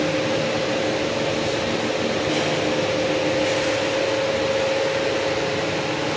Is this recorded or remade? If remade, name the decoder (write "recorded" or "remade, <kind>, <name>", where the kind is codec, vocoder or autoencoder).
recorded